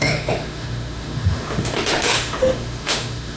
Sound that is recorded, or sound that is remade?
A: remade